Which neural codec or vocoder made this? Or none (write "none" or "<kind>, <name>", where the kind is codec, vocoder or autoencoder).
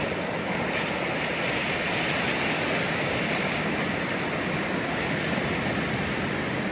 none